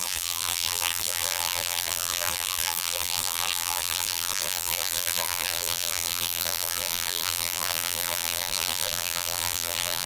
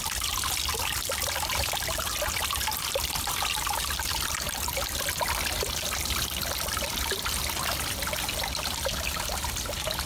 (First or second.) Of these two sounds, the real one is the second